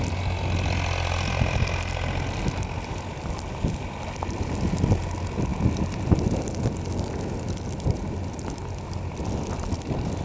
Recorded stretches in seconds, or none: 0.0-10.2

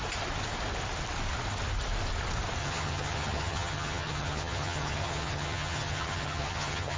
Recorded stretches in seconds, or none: 0.0-2.6

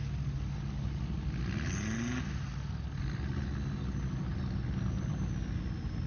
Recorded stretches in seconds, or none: 0.0-6.1

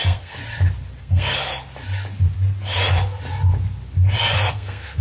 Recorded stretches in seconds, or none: 0.4-1.0; 1.5-4.5